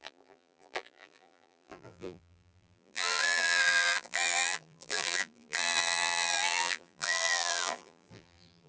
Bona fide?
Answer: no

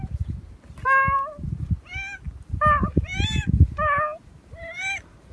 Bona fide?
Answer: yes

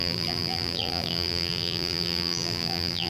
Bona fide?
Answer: no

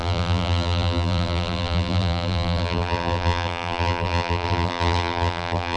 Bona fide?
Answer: no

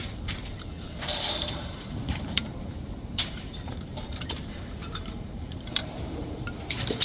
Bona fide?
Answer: no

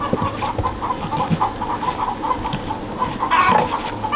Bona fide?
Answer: yes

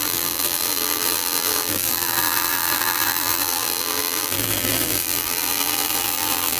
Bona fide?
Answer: no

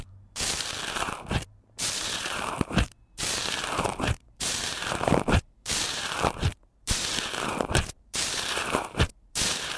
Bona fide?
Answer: no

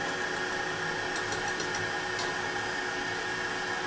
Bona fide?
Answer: yes